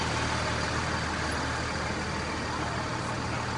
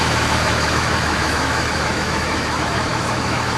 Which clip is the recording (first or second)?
first